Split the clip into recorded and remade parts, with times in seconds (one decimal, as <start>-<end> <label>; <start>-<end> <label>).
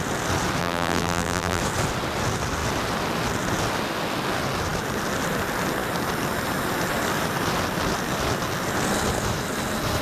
0.0-0.6 recorded; 0.6-1.6 remade; 1.6-10.0 recorded